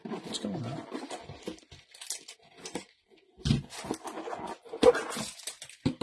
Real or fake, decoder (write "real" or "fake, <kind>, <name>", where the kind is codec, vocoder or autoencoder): real